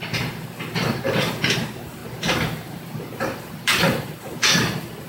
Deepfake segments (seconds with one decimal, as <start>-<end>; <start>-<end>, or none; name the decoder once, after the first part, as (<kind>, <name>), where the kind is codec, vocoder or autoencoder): 0.0-5.1 (vocoder, BigVGAN v2)